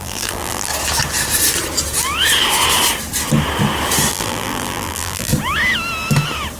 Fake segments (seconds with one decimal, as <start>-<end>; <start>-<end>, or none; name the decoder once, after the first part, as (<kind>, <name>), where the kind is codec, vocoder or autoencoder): 0.0-0.7 (vocoder, BigVGAN v2); 4.1-5.3